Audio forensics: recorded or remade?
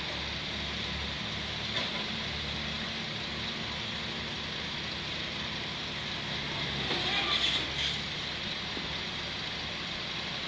recorded